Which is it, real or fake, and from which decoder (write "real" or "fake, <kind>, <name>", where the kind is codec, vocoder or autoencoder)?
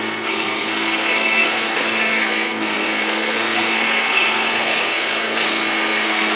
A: fake, codec, SNAC